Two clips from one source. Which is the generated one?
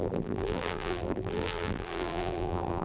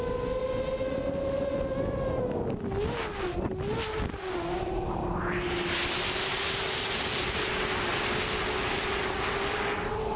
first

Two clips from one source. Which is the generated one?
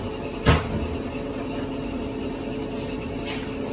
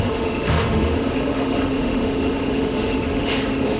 second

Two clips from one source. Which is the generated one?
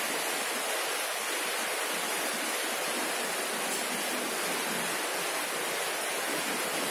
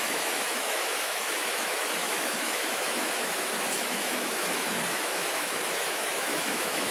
second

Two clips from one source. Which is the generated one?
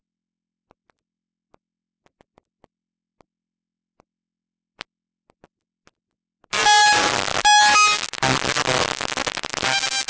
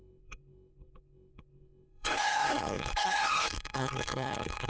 second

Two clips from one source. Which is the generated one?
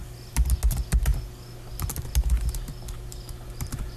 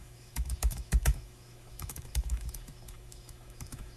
second